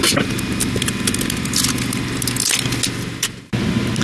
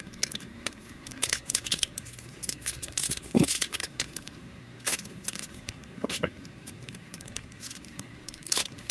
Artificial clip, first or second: second